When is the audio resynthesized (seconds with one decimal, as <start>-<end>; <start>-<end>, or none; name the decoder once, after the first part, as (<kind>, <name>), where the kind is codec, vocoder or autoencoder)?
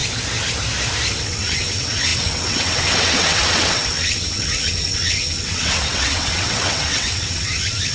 1.2-7.9 (vocoder, WaveNeXt)